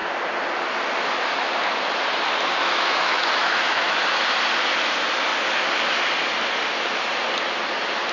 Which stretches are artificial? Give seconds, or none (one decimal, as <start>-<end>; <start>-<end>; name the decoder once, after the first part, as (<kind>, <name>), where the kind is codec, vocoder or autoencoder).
2.6-4.0 (autoencoder, DAC-VAE)